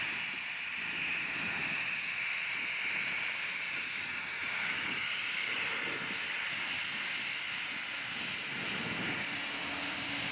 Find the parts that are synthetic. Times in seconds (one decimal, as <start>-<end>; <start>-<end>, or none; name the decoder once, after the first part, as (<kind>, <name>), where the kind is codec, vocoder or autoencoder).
4.0-5.6 (codec, DAC)